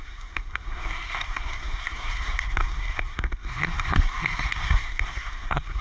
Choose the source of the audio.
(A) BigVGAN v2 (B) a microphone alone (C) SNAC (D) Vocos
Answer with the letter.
C